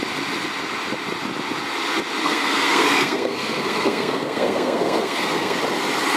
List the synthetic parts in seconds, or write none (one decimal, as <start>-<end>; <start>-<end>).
2.2-5.6